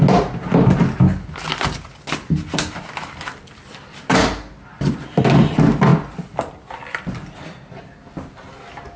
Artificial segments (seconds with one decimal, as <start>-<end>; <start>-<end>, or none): 5.9-8.3